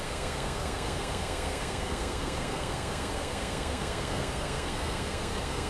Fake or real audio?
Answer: fake